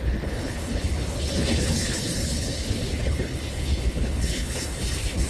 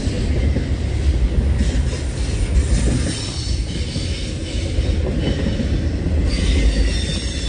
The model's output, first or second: first